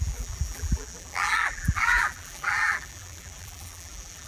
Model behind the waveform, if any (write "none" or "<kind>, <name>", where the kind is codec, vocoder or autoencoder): vocoder, BigVGAN v2